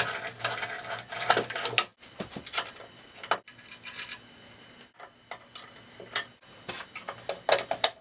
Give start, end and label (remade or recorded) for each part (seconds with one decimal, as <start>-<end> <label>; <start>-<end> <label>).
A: 0.0-8.0 recorded

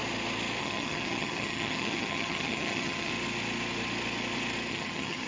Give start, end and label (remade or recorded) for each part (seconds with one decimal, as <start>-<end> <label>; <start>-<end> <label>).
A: 0.0-0.6 recorded; 0.6-3.1 remade; 3.1-4.7 recorded; 4.7-5.3 remade

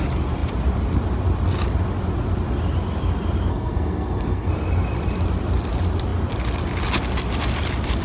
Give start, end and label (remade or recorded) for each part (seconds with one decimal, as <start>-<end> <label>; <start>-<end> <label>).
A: 0.0-3.5 recorded; 3.5-4.5 remade; 4.5-8.0 recorded

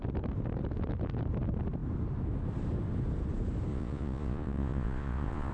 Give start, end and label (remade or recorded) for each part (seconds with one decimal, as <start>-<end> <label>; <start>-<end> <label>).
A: 0.0-3.7 recorded; 3.7-5.5 remade

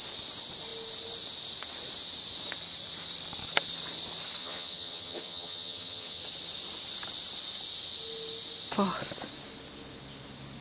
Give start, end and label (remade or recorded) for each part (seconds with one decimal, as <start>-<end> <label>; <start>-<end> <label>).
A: 0.0-4.4 recorded; 4.4-6.2 remade; 6.2-10.6 recorded

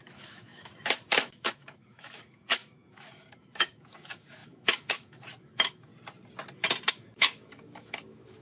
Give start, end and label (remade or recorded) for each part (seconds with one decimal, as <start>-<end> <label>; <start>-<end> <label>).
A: 0.0-5.9 remade; 5.9-6.9 recorded; 6.9-8.4 remade

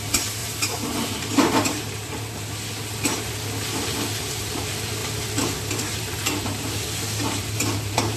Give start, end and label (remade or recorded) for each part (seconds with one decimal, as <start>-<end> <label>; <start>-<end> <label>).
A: 0.0-0.4 recorded; 0.4-2.5 remade; 2.5-5.0 recorded; 5.0-8.2 remade